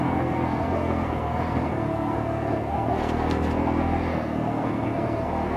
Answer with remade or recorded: remade